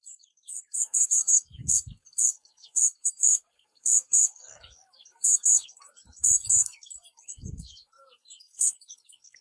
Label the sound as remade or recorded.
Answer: remade